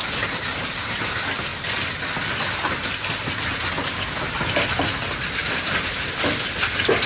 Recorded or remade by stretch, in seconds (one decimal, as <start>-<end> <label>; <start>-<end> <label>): 0.0-5.4 recorded; 5.4-6.0 remade; 6.0-7.1 recorded